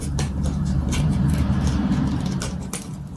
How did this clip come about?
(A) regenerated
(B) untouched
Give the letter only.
A